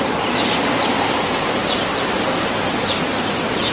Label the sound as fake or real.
real